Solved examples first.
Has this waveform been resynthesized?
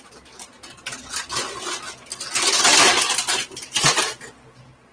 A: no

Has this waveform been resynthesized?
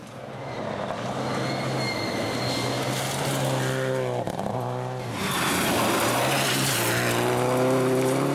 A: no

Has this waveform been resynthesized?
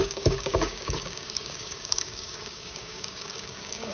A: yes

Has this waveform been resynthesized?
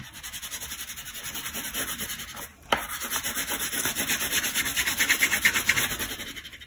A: no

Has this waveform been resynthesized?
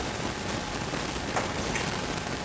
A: no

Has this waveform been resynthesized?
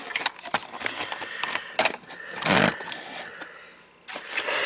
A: no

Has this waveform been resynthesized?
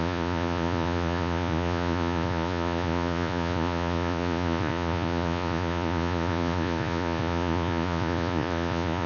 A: yes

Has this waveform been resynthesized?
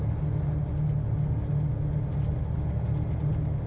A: no